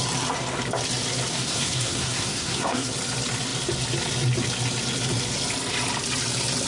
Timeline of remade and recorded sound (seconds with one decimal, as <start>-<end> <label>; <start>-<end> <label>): 0.0-1.3 recorded; 1.3-2.9 remade; 2.9-6.7 recorded